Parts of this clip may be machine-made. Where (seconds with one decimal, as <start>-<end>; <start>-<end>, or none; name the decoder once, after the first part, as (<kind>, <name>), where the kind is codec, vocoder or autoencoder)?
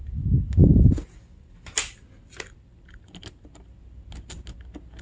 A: none